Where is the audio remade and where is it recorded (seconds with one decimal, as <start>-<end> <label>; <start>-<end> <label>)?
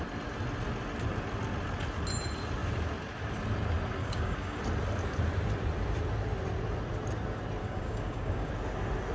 0.0-4.0 recorded; 4.0-4.6 remade; 4.6-7.6 recorded; 7.6-8.5 remade; 8.5-9.1 recorded